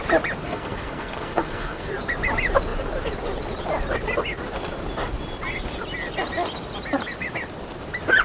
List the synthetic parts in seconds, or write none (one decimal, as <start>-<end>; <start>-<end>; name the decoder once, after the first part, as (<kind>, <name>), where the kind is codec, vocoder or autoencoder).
0.4-1.9 (codec, SNAC)